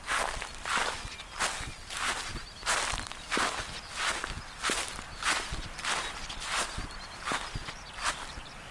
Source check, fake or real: real